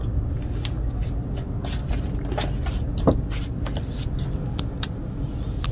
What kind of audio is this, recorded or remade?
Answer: recorded